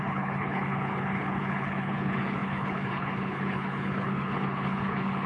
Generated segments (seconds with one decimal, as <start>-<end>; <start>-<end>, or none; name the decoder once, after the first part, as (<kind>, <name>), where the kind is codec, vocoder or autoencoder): 0.0-5.3 (codec, HILCodec)